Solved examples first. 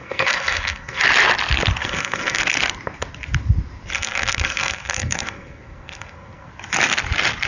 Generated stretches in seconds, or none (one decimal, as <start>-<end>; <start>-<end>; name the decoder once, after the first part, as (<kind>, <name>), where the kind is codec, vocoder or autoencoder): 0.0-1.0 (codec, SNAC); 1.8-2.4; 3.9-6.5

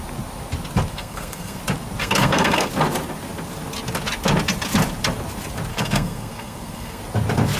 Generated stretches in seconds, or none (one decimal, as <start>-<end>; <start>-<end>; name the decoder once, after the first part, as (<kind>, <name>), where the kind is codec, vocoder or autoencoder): 0.9-1.6 (codec, SNAC); 2.0-2.7; 5.7-7.0

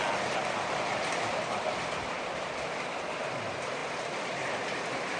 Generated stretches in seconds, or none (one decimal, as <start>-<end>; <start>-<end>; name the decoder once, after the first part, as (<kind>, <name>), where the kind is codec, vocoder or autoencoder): none